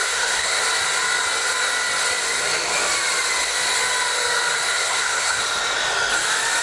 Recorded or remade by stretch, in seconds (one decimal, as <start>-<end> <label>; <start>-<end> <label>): 0.0-0.6 remade; 0.6-4.7 recorded; 4.7-5.4 remade; 5.4-6.6 recorded